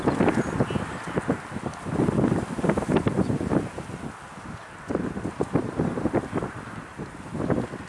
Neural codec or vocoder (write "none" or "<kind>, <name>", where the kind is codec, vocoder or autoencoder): none